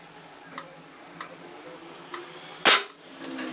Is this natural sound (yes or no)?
yes